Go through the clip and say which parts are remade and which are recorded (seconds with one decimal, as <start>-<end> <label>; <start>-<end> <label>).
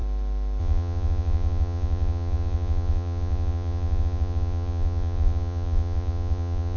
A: 0.0-0.6 recorded; 0.6-6.8 remade